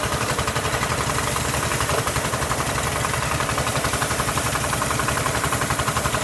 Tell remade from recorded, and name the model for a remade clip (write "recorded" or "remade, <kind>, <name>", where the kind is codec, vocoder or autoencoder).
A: recorded